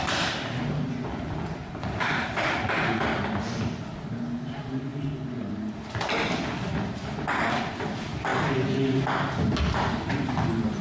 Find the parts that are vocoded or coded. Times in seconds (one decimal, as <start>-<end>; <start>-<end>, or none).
none

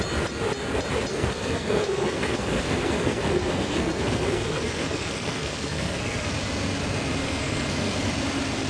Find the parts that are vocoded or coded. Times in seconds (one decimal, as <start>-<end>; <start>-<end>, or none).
1.1-6.3; 7.2-8.1

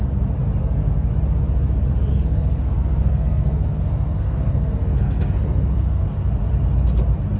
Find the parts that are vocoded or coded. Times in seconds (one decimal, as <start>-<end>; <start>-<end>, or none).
0.6-1.1; 2.1-6.3

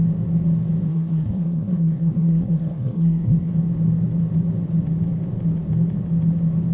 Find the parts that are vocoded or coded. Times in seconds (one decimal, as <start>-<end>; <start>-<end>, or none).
0.9-3.5

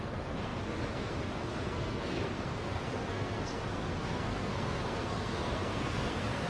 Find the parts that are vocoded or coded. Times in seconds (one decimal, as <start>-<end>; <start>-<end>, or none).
0.0-6.5

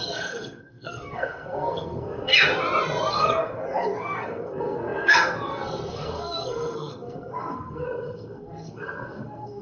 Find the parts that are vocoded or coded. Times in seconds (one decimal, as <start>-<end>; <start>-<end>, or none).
0.0-2.3; 3.1-9.6

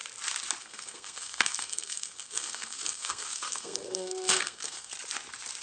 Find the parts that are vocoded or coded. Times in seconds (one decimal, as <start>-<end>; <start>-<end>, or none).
0.6-4.9